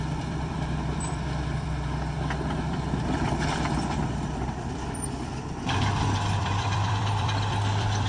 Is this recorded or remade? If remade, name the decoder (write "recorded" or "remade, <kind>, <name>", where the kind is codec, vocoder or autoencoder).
remade, vocoder, BigVGAN v2